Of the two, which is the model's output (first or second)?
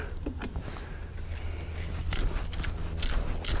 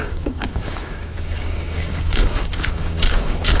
second